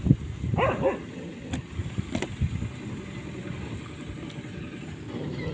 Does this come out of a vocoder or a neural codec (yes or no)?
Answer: no